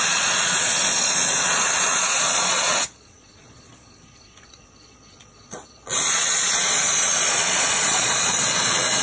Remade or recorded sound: remade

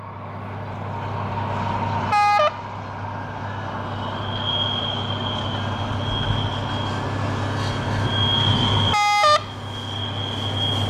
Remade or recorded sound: recorded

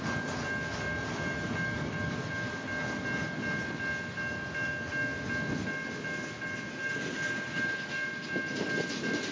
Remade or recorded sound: recorded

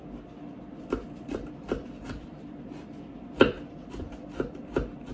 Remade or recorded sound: remade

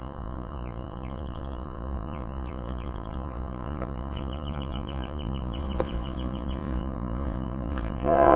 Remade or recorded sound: remade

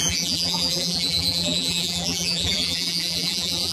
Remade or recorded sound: remade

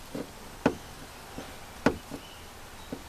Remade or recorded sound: recorded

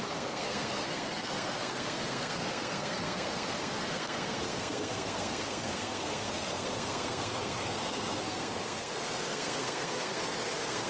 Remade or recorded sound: remade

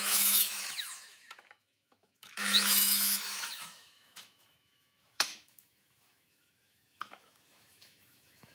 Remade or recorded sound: remade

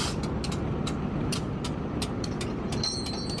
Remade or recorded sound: recorded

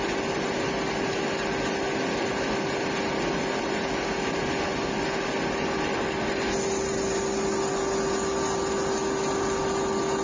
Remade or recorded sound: recorded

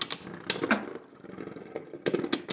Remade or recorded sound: recorded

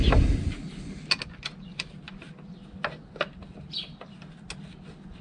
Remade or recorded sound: recorded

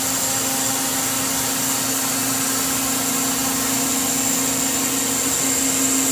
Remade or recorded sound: recorded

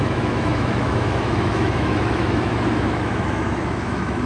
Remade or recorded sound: remade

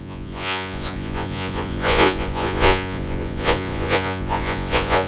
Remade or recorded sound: remade